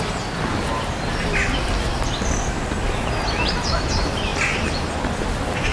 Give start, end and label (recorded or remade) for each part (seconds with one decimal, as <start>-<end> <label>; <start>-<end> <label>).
0.0-5.7 recorded